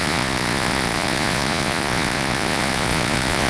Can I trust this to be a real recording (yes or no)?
no